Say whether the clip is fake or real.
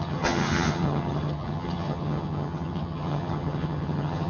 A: fake